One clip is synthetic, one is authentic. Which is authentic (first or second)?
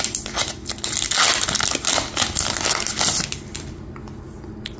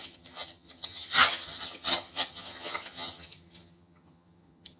first